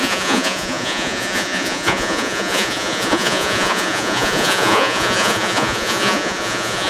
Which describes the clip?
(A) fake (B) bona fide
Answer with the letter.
A